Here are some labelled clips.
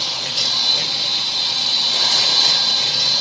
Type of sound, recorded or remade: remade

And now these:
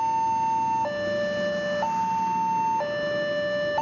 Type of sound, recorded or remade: recorded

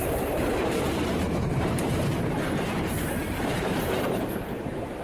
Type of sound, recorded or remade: remade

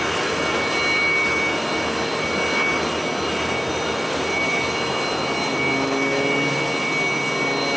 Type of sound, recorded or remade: recorded